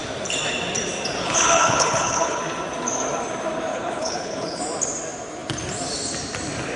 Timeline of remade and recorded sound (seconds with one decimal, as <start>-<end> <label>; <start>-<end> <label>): 0.0-1.2 recorded; 1.2-2.4 remade; 2.4-3.7 recorded; 3.7-4.6 remade; 4.6-6.8 recorded